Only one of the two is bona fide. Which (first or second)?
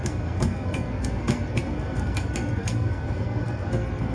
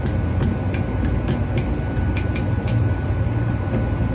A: second